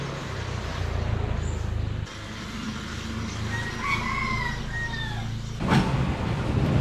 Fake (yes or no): no